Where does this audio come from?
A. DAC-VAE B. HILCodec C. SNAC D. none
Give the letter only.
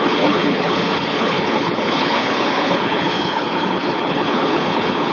B